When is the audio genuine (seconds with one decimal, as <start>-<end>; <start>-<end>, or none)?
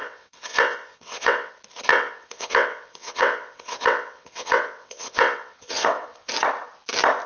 1.5-1.9; 6.3-7.3